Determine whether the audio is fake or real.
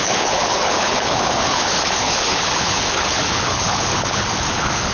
fake